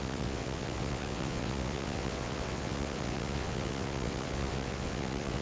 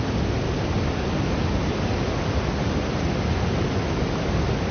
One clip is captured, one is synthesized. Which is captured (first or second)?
second